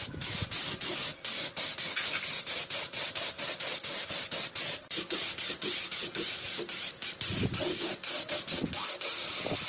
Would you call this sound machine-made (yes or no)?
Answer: no